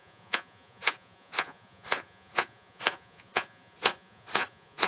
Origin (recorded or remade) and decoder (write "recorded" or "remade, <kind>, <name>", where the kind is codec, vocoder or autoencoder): remade, vocoder, Vocos